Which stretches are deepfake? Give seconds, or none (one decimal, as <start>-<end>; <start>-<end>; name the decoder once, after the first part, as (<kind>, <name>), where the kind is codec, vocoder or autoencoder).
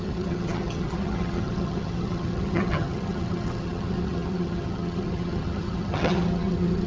0.0-6.9 (vocoder, HiFi-GAN)